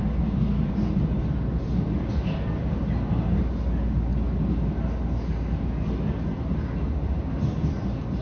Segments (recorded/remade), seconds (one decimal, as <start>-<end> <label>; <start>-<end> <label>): 0.0-8.2 recorded